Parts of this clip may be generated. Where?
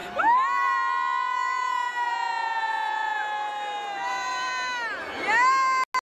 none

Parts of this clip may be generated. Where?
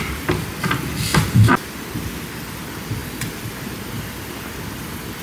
none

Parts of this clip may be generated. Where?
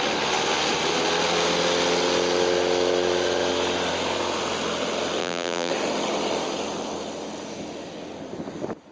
5.2-5.7 (vocoder, BigVGAN v2)